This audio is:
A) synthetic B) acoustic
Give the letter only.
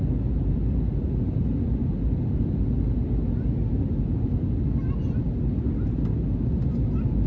B